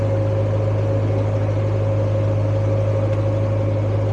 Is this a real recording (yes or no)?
yes